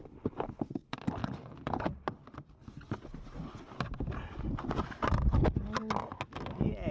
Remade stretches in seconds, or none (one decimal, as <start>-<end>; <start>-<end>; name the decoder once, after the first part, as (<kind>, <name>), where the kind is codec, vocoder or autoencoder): none